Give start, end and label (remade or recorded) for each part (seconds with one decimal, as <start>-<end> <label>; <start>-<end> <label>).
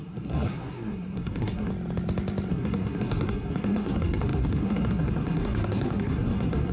0.0-1.7 remade; 1.7-2.5 recorded; 2.5-6.7 remade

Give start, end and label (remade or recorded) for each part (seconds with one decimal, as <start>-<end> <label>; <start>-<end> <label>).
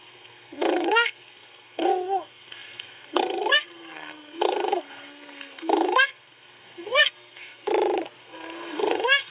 0.0-7.7 remade; 7.7-8.2 recorded; 8.2-9.3 remade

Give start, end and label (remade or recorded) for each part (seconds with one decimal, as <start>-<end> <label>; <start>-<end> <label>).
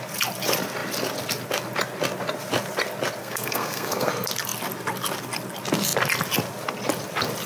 0.0-3.2 recorded; 3.2-4.1 remade; 4.1-7.5 recorded